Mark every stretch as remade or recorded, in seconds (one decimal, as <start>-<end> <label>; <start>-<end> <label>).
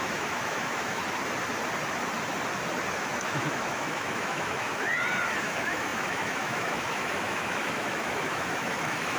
0.0-1.0 remade; 1.0-3.0 recorded; 3.0-4.9 remade; 4.9-5.4 recorded; 5.4-9.2 remade